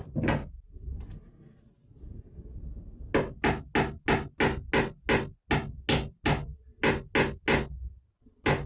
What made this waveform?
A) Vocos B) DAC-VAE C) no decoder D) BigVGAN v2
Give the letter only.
C